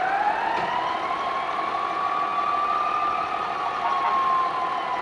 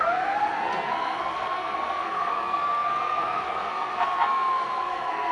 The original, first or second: first